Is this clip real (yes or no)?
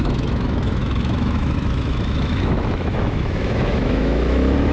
no